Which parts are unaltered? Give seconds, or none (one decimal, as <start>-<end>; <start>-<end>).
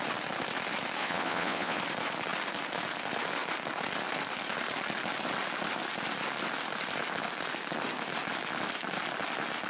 0.0-1.0; 1.8-9.7